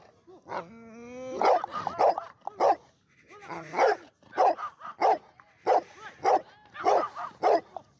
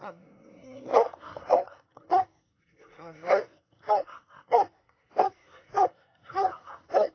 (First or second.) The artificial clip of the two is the second